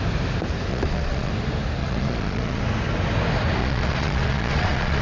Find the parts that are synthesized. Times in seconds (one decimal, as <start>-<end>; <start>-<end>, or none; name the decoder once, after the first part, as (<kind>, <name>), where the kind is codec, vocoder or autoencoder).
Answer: 0.7-1.3 (vocoder, Vocos); 1.8-2.6; 3.6-5.0